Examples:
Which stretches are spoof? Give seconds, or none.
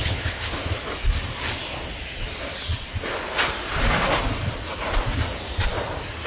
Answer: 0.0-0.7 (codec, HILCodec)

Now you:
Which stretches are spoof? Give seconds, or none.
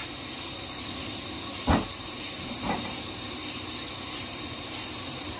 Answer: 2.0-5.4 (vocoder, BigVGAN v2)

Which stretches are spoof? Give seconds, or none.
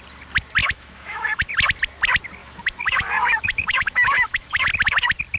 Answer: 0.6-1.5 (autoencoder, DAC-VAE); 2.4-4.7